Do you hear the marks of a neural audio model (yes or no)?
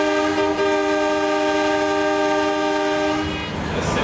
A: no